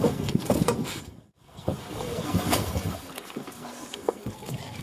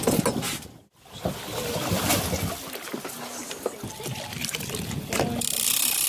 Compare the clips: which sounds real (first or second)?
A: second